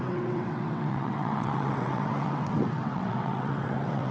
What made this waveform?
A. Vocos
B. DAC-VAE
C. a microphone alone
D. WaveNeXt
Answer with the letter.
D